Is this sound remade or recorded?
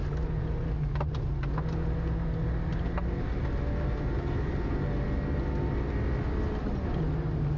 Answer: recorded